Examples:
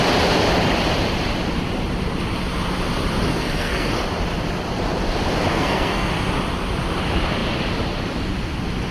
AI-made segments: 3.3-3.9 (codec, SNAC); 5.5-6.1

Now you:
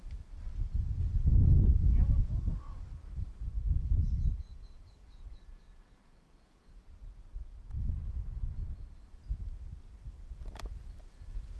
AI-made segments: 1.4-1.9 (vocoder, Vocos); 3.5-7.8

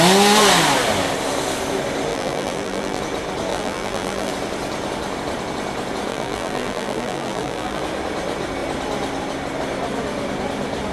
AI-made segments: 2.1-3.0 (vocoder, BigVGAN v2); 3.5-4.3; 6.1-7.8